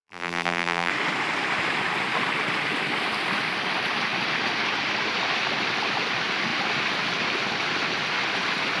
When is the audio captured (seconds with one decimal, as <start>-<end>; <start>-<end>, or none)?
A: 0.9-8.8